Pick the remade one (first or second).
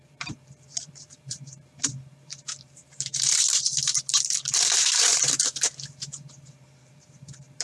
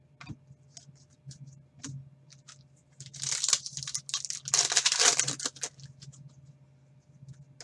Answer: first